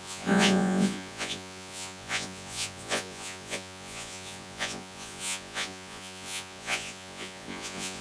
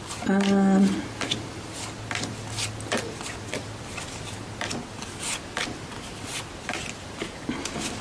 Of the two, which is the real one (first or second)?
second